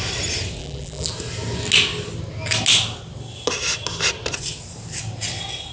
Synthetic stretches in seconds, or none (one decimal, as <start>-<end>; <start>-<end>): 0.6-1.1